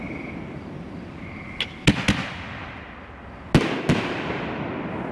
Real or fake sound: real